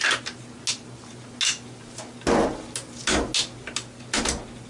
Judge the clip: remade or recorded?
recorded